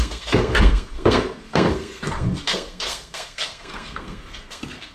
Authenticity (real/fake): fake